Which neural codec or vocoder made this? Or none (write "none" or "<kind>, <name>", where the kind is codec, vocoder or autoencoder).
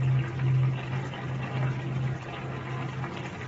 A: none